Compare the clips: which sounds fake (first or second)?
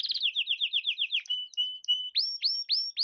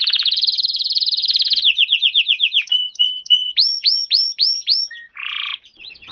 second